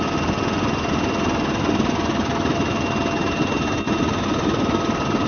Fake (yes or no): no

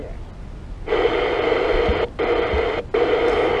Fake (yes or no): no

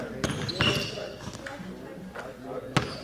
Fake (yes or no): no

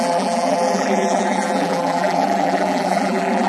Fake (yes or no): yes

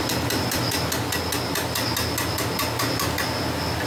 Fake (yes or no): no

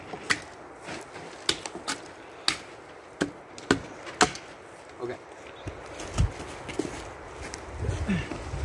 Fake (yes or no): no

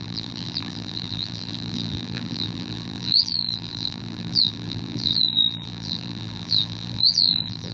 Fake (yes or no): yes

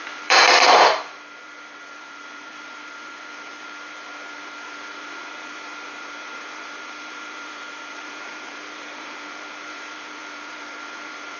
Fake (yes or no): yes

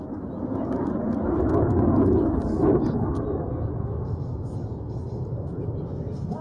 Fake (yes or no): no